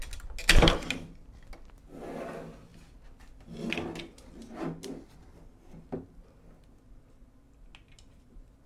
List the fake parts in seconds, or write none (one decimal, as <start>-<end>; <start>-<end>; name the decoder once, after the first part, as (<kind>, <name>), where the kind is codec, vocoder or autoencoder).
none